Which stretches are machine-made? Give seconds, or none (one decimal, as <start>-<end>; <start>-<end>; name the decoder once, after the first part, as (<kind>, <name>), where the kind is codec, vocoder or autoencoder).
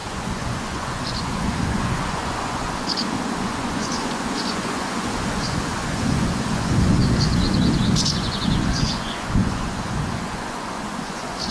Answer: 0.0-11.5 (vocoder, Vocos)